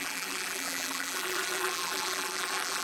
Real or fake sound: fake